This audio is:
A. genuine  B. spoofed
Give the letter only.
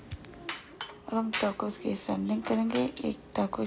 A